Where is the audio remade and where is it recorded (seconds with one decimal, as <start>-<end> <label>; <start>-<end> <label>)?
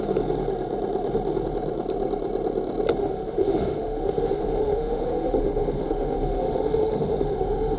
0.0-3.0 recorded; 3.0-7.8 remade